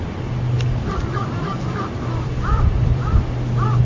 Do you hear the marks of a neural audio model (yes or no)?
yes